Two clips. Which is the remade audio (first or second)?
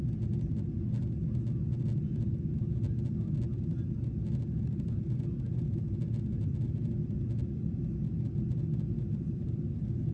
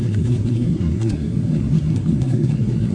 second